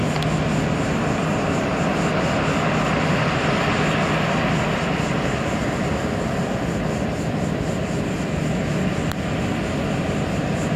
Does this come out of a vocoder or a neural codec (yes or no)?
no